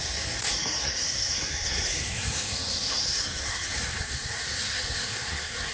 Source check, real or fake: fake